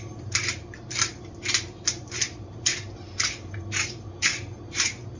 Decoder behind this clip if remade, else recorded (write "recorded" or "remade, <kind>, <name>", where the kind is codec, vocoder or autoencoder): remade, vocoder, BigVGAN v2